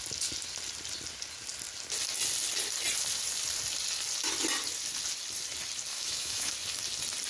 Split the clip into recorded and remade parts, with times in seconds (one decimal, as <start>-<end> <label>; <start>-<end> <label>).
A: 0.0-5.9 recorded; 5.9-6.5 remade; 6.5-7.3 recorded